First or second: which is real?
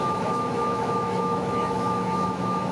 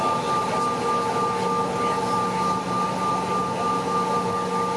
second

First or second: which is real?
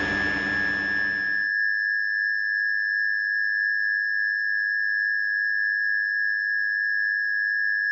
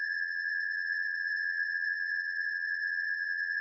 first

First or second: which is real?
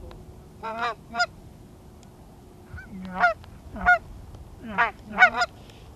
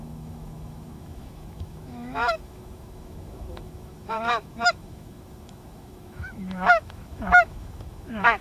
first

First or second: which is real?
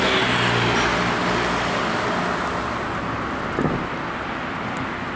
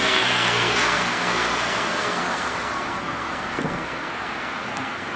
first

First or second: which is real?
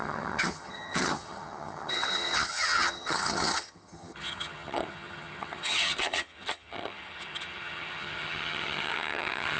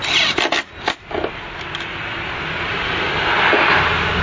second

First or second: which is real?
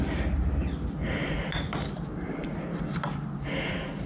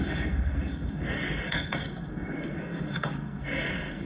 first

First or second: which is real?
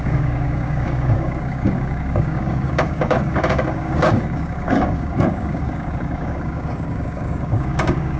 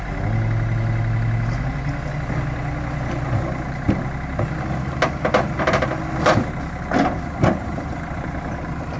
second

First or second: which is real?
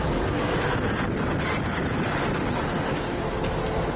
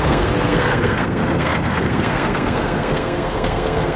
first